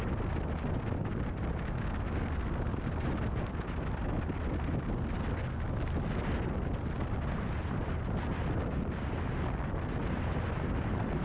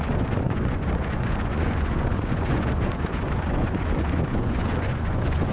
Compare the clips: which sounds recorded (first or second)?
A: first